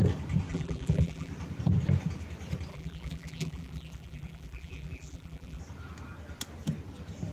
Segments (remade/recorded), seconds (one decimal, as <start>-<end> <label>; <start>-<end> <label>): 0.0-0.5 recorded; 0.5-1.3 remade; 1.3-2.7 recorded; 2.7-5.6 remade; 5.6-7.3 recorded